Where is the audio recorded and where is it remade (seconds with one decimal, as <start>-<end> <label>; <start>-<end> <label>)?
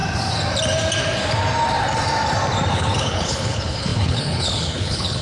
0.0-2.7 recorded; 2.7-5.2 remade